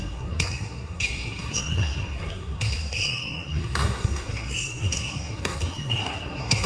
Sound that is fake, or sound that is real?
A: fake